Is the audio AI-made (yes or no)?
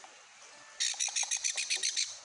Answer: no